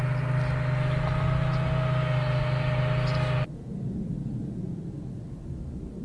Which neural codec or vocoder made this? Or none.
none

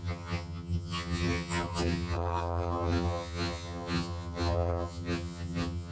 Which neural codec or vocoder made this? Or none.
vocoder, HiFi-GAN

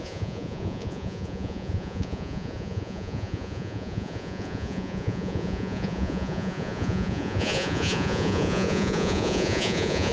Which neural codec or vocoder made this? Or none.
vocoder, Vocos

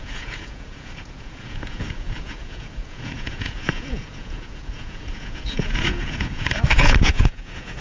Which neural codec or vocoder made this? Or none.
vocoder, Vocos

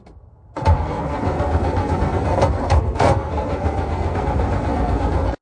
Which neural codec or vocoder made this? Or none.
codec, SNAC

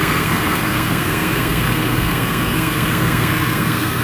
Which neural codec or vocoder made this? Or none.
codec, SNAC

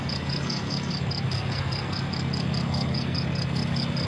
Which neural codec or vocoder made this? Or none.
codec, SNAC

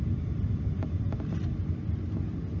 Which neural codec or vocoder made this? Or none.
none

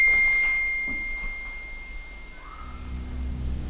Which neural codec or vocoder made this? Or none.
none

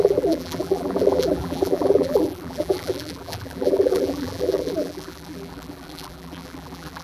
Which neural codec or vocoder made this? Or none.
vocoder, BigVGAN v2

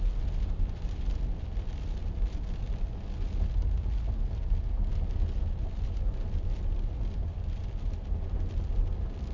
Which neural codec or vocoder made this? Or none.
none